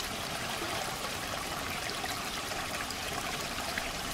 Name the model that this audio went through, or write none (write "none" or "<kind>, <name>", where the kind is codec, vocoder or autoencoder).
vocoder, BigVGAN v2